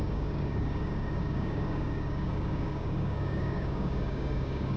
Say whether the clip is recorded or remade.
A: remade